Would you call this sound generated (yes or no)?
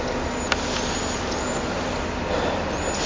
no